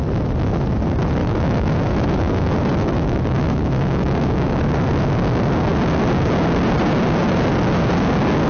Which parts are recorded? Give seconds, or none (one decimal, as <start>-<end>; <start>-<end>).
0.0-1.2; 4.6-8.5